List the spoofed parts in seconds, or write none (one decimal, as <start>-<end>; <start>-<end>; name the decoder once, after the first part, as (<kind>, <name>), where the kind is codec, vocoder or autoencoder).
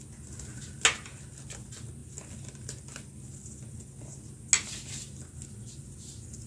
none